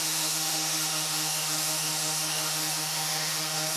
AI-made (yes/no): yes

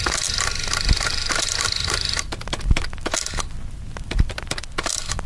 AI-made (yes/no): no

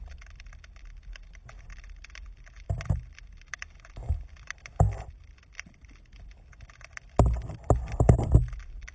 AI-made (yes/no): no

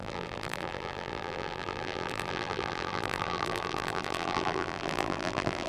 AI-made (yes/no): yes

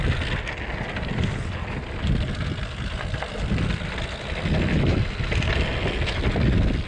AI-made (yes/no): no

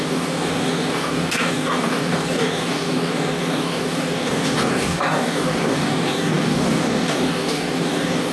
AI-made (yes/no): yes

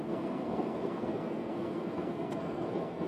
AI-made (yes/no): yes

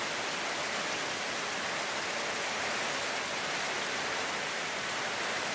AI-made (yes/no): no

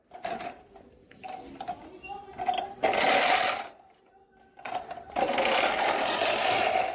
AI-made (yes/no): no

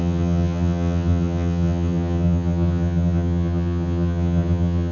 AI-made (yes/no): yes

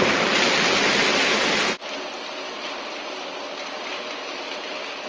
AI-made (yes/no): no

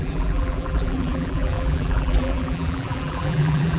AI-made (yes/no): yes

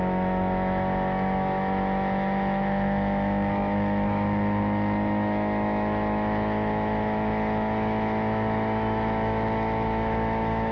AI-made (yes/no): yes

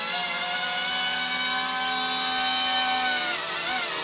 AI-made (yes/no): no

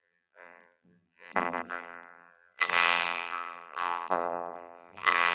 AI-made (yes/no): yes